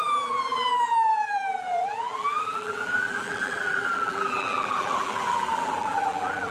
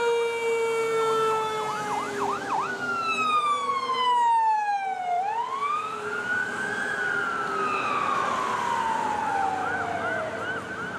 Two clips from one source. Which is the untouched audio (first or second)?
second